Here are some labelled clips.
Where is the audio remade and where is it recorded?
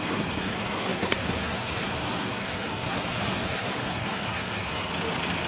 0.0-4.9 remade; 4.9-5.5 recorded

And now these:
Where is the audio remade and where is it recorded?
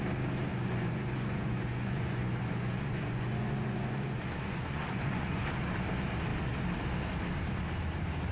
0.0-0.5 recorded; 0.5-5.5 remade; 5.5-8.3 recorded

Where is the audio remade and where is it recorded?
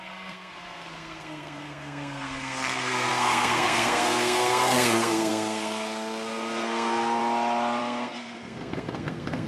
0.0-7.2 remade; 7.2-7.8 recorded; 7.8-9.5 remade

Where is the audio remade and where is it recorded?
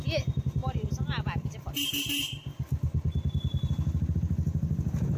0.0-5.2 recorded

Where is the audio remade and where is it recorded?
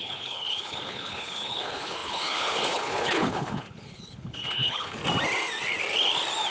0.0-5.0 remade; 5.0-6.5 recorded